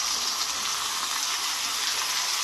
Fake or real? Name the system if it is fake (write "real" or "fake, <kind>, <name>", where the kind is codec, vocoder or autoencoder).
real